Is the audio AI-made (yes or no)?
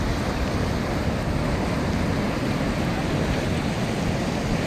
no